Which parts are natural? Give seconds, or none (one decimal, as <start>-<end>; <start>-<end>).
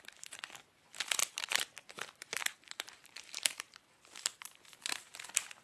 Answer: 0.0-1.2; 4.6-5.6